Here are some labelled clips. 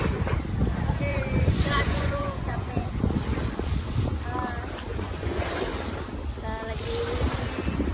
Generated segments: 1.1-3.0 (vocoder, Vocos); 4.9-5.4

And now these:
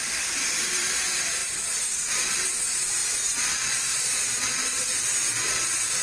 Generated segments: 0.0-3.0 (vocoder, BigVGAN v2); 3.7-6.0

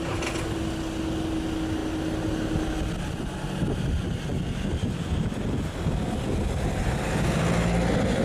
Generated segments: none

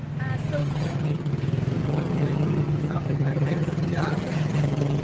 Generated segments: 0.6-1.3 (vocoder, HiFi-GAN); 1.8-5.0

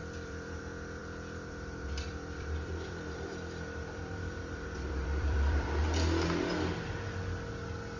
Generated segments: 0.0-0.6 (vocoder, BigVGAN v2); 1.0-5.8

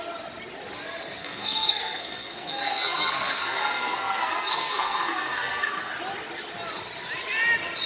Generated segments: 1.2-5.9 (codec, SNAC)

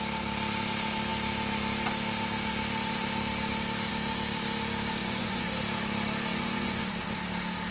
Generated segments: 5.0-5.5 (vocoder, Vocos); 6.3-6.9